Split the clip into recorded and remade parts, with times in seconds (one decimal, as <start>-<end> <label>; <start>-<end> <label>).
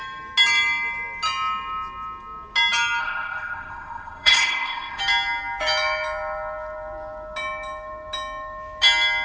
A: 0.0-3.0 recorded; 3.0-5.0 remade; 5.0-9.2 recorded